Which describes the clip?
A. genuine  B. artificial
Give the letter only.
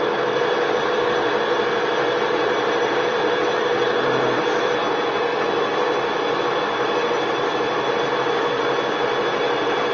B